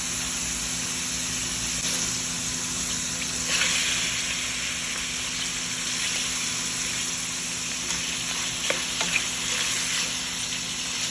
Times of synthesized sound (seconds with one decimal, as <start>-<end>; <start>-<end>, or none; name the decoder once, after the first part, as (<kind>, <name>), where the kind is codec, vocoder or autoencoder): none